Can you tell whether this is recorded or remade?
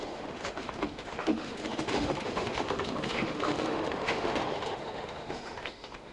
remade